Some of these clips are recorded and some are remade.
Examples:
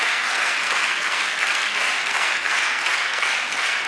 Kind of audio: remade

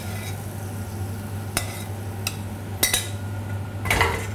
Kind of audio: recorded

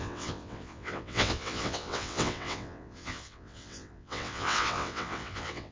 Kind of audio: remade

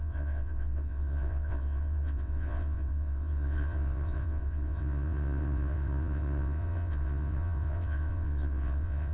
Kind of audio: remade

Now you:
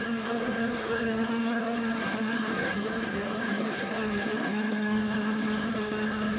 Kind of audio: remade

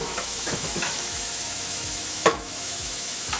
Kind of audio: remade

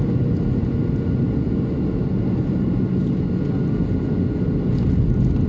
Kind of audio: recorded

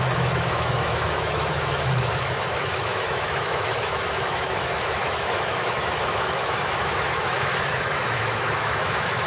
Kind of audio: remade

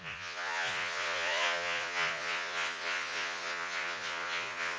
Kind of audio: remade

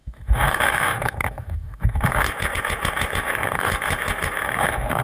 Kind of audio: remade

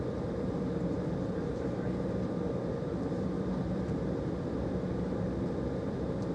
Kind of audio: remade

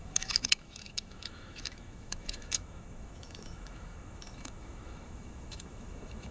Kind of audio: remade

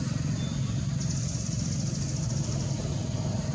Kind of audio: recorded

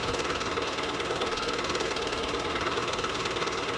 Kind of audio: remade